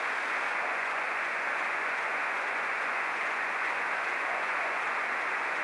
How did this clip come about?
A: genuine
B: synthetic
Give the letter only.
B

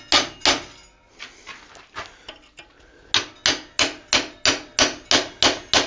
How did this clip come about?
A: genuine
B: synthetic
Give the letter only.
A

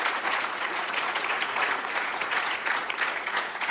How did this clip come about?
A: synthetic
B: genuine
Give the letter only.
A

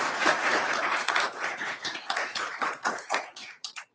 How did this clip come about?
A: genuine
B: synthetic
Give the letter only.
B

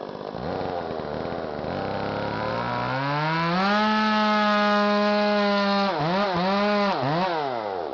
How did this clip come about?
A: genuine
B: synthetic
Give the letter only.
A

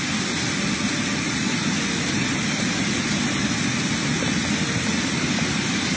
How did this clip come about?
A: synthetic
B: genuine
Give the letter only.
B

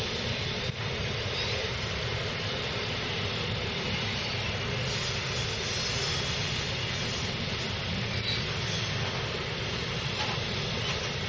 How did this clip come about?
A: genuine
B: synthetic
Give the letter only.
A